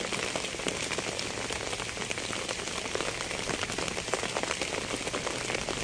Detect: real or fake real